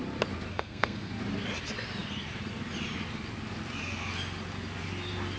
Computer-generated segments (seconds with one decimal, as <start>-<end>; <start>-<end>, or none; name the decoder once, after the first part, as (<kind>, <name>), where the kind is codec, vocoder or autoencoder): 0.5-1.1 (codec, SNAC)